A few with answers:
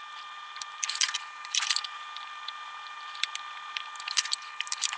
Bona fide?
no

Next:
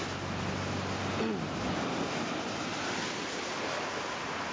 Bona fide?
yes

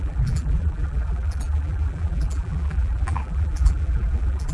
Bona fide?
no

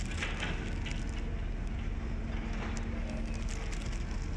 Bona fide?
yes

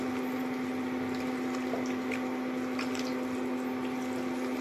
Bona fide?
yes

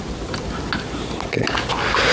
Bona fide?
yes